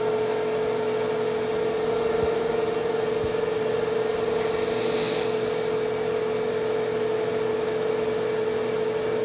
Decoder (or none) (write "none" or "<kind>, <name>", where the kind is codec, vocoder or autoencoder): none